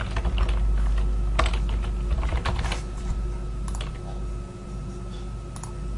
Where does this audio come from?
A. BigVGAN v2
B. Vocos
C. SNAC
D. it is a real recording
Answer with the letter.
D